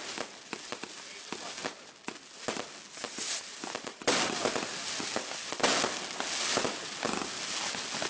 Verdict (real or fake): real